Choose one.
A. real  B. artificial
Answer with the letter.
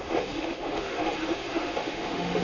B